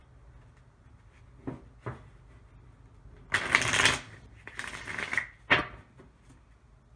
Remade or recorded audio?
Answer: recorded